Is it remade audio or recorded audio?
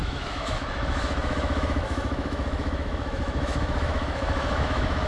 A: remade